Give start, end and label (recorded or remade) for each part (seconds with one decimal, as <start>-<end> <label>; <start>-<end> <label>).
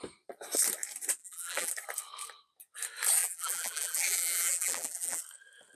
0.0-1.2 recorded; 1.2-1.7 remade; 1.7-3.2 recorded; 3.2-5.2 remade; 5.2-5.8 recorded